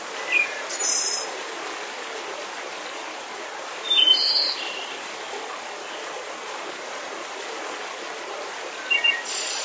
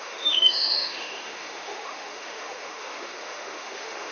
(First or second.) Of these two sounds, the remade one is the second